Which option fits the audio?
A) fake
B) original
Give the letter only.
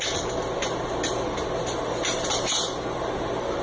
B